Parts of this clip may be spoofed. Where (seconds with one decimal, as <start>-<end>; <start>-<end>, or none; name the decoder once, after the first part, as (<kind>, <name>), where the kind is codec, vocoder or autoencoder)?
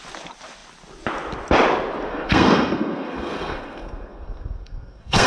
2.1-5.3 (codec, SNAC)